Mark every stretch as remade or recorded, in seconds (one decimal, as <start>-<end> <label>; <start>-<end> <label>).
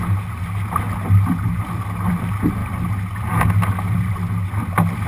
0.0-5.1 recorded